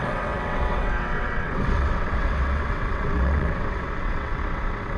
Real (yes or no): no